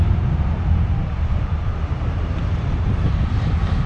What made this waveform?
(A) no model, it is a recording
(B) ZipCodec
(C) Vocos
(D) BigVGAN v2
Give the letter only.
D